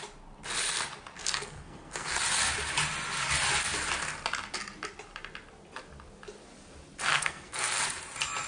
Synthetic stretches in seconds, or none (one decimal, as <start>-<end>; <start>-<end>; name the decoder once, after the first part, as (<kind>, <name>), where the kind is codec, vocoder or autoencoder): 1.2-2.2 (codec, SNAC); 7.1-7.8